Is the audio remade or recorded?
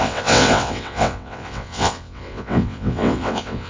remade